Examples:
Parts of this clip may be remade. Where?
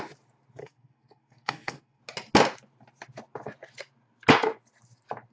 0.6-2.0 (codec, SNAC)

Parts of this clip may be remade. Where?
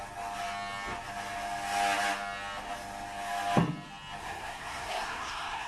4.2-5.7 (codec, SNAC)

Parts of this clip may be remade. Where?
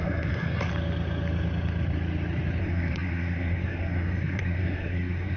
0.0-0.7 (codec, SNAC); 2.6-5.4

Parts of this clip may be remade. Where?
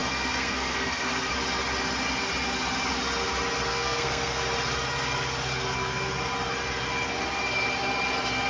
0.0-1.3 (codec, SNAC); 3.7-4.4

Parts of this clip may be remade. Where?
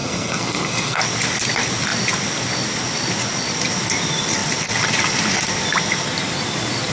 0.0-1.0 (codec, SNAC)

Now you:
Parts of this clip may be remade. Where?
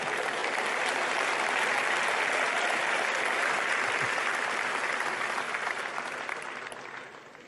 none